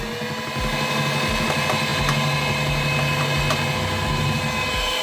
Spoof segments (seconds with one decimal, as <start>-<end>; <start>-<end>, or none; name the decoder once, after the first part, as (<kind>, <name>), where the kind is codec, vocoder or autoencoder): none